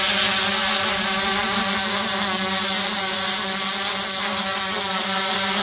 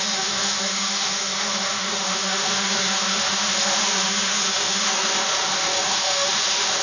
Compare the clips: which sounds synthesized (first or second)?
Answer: second